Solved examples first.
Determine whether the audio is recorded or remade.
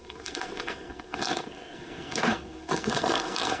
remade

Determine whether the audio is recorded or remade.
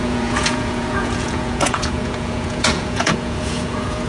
remade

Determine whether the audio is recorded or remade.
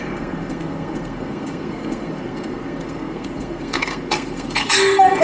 remade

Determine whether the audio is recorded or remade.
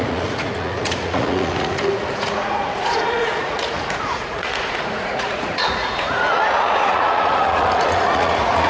remade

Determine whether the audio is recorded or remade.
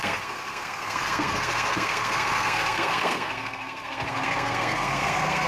remade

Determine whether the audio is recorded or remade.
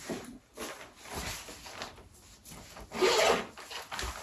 recorded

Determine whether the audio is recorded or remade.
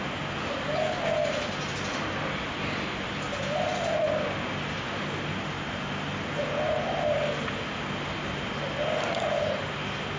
recorded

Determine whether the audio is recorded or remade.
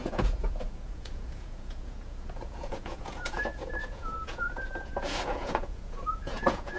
remade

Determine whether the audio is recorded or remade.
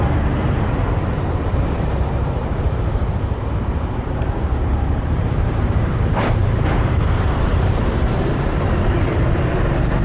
remade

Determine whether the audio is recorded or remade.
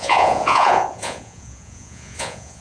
remade